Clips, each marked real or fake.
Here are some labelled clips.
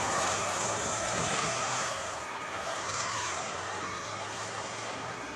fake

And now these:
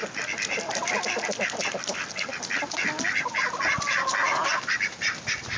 real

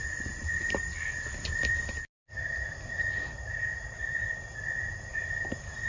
real